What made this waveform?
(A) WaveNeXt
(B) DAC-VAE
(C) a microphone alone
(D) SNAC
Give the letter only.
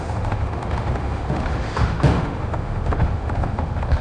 B